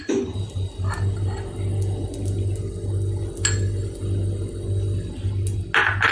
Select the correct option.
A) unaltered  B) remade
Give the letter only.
A